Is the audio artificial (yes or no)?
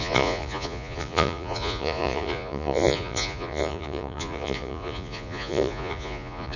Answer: yes